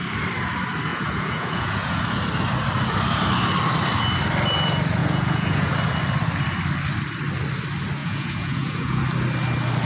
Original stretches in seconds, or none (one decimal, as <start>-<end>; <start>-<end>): 0.0-0.9; 2.0-5.0; 5.7-8.0; 9.0-9.8